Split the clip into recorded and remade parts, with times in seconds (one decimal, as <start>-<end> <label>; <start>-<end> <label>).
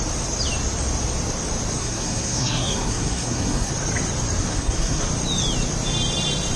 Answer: 0.0-1.8 recorded; 1.8-3.7 remade; 3.7-4.5 recorded; 4.5-5.0 remade; 5.0-6.6 recorded